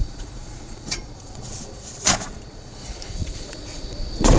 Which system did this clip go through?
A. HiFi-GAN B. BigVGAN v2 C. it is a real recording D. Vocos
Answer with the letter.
D